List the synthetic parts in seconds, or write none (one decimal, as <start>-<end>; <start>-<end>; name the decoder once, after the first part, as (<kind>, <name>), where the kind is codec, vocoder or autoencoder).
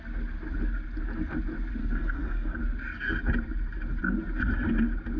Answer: 1.8-2.6 (codec, SNAC)